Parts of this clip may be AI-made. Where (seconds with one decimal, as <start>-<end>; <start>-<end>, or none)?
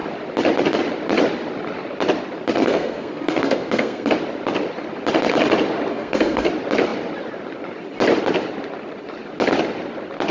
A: 2.6-4.1; 5.9-6.5